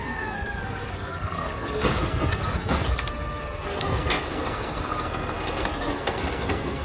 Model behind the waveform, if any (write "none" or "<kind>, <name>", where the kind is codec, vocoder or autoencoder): codec, SNAC